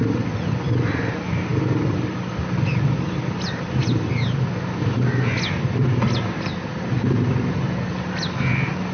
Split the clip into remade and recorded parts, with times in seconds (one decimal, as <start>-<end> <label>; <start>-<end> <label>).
0.0-8.9 recorded